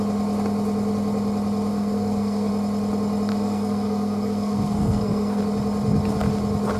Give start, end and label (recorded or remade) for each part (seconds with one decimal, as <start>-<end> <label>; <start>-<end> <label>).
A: 0.0-1.7 recorded; 1.7-2.5 remade; 2.5-3.3 recorded; 3.3-5.4 remade; 5.4-6.8 recorded